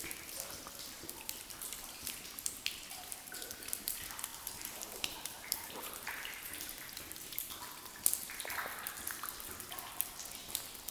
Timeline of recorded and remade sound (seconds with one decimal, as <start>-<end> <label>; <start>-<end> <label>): 0.0-4.3 recorded; 4.3-6.5 remade; 6.5-10.9 recorded